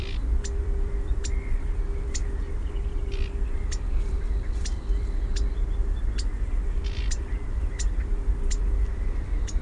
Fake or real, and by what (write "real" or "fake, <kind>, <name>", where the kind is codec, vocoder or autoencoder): fake, vocoder, BigVGAN v2